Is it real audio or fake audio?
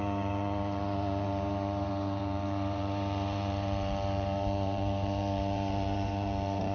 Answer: fake